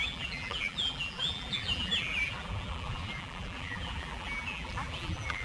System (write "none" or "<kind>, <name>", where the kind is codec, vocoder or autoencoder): vocoder, BigVGAN v2